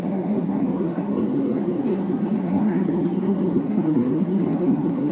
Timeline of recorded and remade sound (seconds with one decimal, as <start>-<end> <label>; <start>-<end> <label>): 0.0-5.1 remade